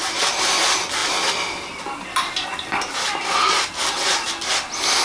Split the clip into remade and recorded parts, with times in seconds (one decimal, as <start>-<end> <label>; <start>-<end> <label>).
0.0-5.0 recorded